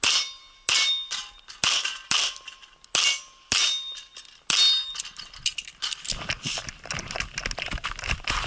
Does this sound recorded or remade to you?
recorded